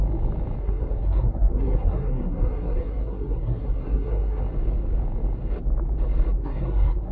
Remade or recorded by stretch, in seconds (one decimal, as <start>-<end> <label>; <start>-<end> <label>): 0.0-0.6 recorded; 0.6-4.4 remade; 4.4-6.4 recorded; 6.4-7.1 remade